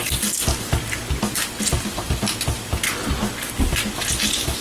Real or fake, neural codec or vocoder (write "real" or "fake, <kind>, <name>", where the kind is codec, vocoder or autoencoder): real